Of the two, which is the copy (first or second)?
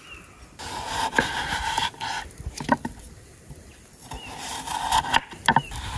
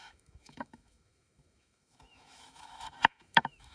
second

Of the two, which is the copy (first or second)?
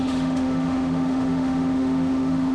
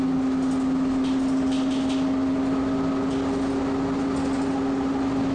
first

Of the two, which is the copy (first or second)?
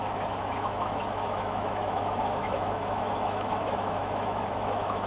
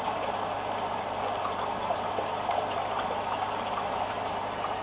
first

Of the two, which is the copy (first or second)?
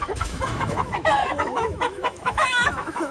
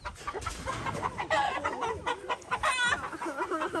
first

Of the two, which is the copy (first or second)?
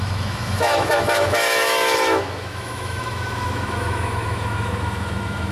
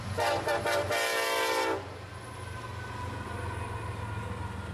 first